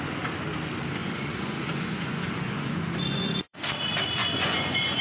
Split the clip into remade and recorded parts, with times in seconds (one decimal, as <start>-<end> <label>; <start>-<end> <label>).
0.0-1.0 recorded; 1.0-3.6 remade; 3.6-4.2 recorded; 4.2-5.0 remade